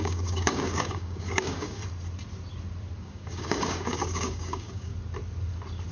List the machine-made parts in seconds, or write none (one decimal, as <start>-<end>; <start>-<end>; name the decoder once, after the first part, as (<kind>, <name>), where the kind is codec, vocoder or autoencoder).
0.0-1.8 (codec, DAC); 3.0-4.9